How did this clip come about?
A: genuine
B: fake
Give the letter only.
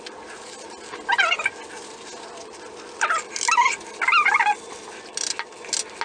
A